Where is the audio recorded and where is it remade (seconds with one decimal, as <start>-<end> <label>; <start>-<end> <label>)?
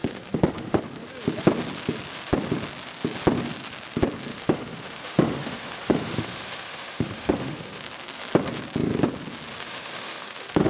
0.0-0.8 remade; 0.8-4.3 recorded; 4.3-7.8 remade; 7.8-9.5 recorded; 9.5-10.7 remade